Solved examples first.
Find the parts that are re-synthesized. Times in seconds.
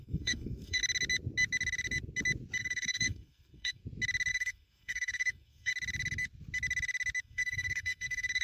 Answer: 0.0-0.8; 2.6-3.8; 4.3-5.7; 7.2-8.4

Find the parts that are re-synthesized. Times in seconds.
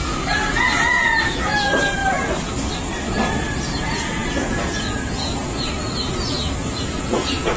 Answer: 0.0-2.0; 3.8-7.6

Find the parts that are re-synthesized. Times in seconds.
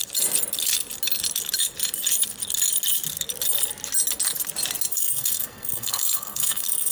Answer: 4.9-6.9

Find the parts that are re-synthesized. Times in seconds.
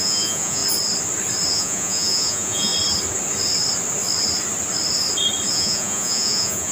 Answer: 0.0-0.6; 1.5-2.7; 5.5-6.7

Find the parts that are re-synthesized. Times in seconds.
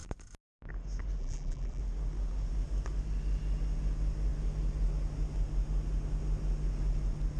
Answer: 1.2-1.8